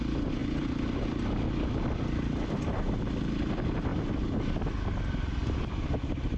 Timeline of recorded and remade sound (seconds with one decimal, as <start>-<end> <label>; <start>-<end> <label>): 0.0-6.4 recorded